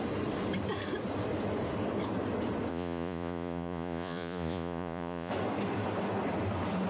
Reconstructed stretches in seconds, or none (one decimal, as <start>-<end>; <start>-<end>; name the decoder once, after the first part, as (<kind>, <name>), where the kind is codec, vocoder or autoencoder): 2.7-5.3 (vocoder, Vocos)